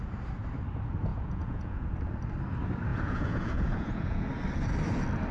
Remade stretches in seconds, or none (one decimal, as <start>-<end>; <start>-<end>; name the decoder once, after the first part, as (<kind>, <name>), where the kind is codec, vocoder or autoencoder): 1.1-1.9 (vocoder, Vocos); 2.9-4.3